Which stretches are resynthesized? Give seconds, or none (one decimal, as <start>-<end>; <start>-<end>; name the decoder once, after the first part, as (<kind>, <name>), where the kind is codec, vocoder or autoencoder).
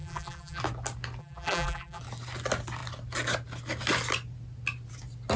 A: 0.0-0.6 (vocoder, BigVGAN v2); 1.2-2.0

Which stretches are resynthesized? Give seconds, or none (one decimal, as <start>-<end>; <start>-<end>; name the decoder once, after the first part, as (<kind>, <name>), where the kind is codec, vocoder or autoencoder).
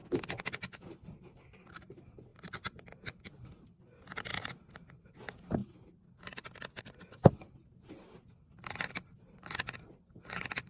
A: 0.6-4.3 (vocoder, BigVGAN v2); 5.1-5.6; 6.8-10.7